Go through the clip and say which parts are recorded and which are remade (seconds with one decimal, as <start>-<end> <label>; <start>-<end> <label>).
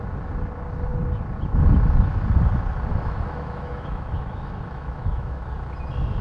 0.0-2.9 recorded; 2.9-5.4 remade; 5.4-6.2 recorded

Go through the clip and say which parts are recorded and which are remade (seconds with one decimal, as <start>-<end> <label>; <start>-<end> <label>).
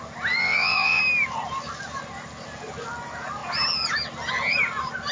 0.0-0.4 recorded; 0.4-1.0 remade; 1.0-5.1 recorded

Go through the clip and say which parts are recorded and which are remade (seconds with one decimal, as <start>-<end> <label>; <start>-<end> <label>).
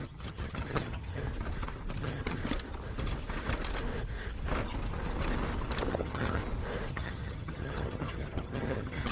0.0-1.2 remade; 1.2-2.0 recorded; 2.0-2.4 remade; 2.4-5.9 recorded; 5.9-6.4 remade; 6.4-6.9 recorded; 6.9-9.1 remade